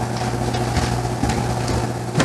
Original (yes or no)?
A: yes